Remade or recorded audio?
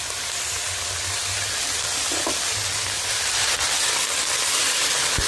recorded